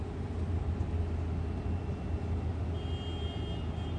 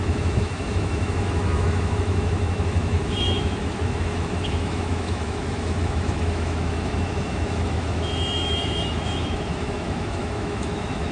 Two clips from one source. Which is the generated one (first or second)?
second